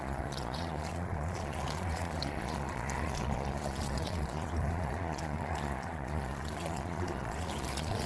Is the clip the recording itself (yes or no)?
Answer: no